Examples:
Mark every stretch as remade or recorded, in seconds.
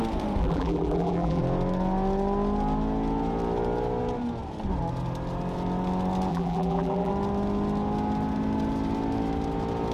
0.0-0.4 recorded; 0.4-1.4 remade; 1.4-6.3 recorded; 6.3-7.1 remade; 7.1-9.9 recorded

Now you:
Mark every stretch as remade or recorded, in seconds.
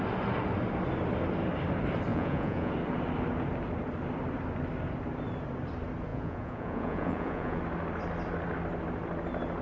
0.0-2.1 recorded; 2.1-2.7 remade; 2.7-6.1 recorded; 6.1-7.6 remade; 7.6-9.6 recorded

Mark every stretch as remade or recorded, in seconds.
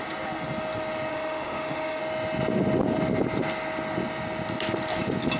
0.0-1.1 recorded; 1.1-2.0 remade; 2.0-5.4 recorded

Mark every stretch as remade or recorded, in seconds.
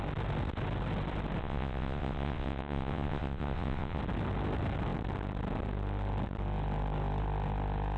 0.0-1.4 recorded; 1.4-4.0 remade; 4.0-8.0 recorded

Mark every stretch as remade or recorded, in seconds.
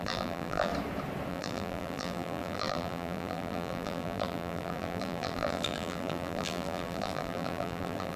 0.0-0.7 remade; 0.7-1.3 recorded; 1.3-8.2 remade